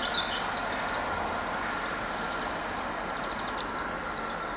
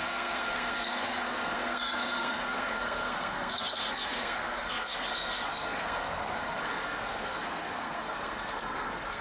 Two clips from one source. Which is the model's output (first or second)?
second